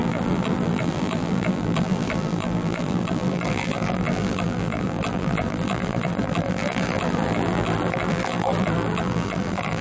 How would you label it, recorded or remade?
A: remade